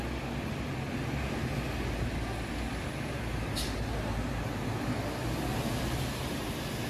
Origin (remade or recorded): recorded